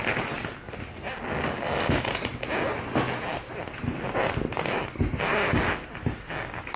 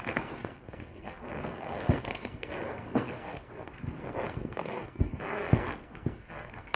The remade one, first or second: second